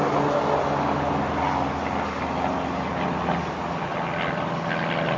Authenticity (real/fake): real